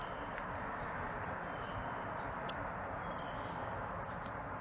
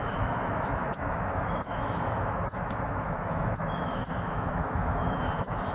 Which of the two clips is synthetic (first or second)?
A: second